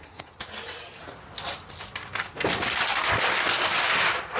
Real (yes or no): yes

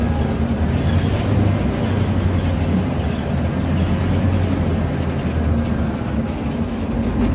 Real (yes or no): yes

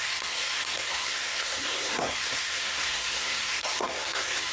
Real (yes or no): no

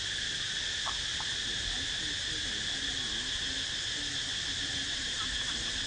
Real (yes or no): yes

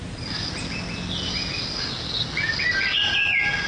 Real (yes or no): yes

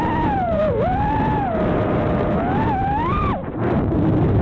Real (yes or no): no